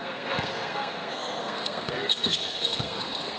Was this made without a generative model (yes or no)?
no